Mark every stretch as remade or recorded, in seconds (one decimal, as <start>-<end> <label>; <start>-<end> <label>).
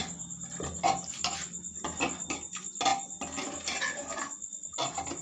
0.0-5.2 recorded